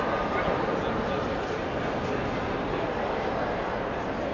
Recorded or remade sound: recorded